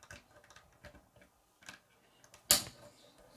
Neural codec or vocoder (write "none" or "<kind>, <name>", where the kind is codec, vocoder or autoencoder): none